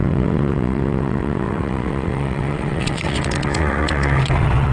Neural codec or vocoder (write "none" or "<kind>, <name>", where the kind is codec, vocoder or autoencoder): vocoder, WaveNeXt